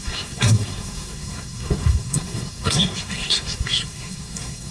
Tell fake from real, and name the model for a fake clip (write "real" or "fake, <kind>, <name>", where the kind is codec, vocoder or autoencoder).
fake, codec, SNAC